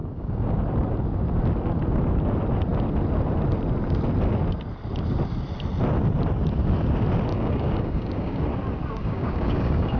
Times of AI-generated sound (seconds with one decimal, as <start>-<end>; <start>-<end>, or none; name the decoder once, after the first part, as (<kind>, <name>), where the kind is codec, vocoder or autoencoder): 0.0-0.6 (codec, DAC); 7.3-8.4; 9.0-10.0